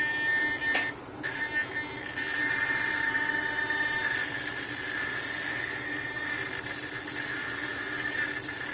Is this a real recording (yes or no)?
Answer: yes